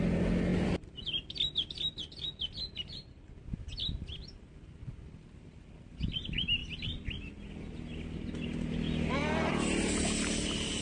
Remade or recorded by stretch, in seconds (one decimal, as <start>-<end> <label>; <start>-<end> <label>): 0.0-10.8 recorded